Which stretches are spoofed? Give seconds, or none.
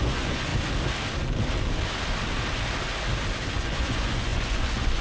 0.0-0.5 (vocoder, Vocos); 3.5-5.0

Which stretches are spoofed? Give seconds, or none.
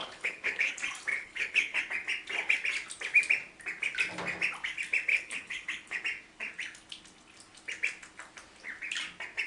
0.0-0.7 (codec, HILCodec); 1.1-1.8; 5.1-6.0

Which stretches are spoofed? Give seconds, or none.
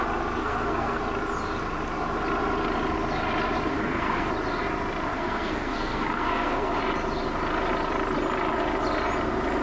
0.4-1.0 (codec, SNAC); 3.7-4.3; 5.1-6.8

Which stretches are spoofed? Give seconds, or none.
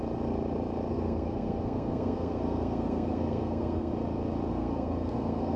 0.9-3.9 (codec, SNAC); 4.5-5.6